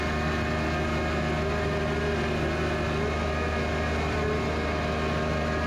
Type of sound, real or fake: real